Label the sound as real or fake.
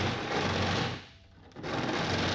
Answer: real